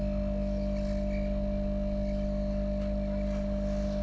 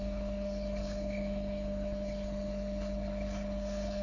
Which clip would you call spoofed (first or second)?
second